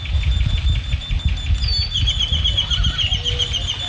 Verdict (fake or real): real